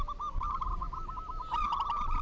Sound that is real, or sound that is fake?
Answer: real